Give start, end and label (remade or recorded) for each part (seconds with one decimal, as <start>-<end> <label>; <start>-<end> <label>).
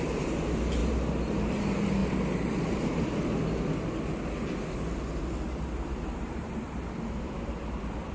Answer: 0.0-2.0 remade; 2.0-6.0 recorded; 6.0-8.1 remade